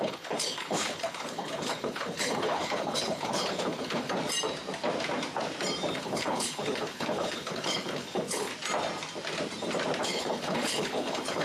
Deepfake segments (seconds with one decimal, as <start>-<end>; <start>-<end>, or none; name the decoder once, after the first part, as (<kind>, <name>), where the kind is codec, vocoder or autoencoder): 0.0-4.2 (codec, HILCodec); 5.9-8.5; 10.0-11.4